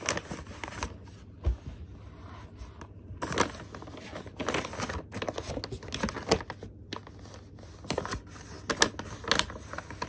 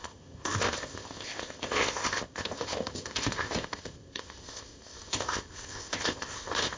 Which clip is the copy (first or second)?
second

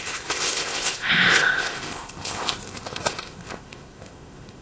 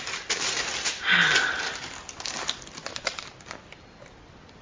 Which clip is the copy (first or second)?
first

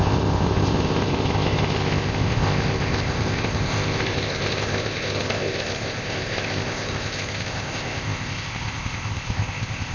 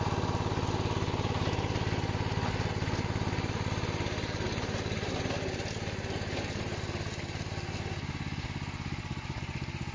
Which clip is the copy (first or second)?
first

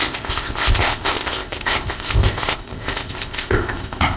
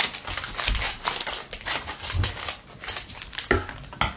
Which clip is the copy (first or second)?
first